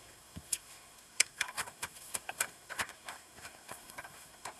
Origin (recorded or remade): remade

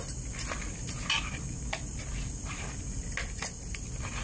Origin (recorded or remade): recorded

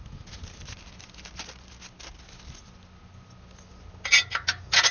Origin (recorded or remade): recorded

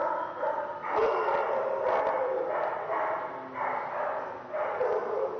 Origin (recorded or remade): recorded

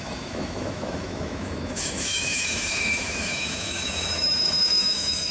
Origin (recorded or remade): remade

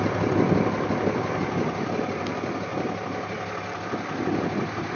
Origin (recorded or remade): recorded